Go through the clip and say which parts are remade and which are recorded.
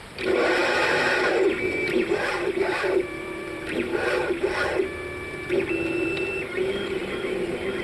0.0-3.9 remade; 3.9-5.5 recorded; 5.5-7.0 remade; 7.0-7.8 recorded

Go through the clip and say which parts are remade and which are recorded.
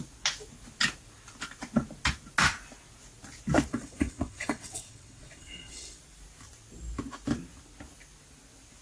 0.0-3.7 recorded; 3.7-6.0 remade; 6.0-8.8 recorded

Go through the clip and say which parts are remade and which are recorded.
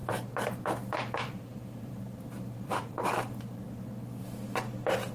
0.0-3.1 remade; 3.1-5.1 recorded